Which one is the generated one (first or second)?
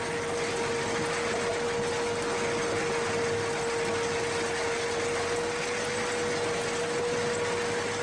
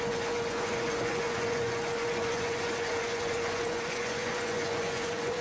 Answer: second